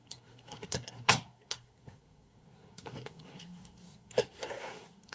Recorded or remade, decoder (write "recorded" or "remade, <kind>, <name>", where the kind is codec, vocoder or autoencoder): remade, codec, SNAC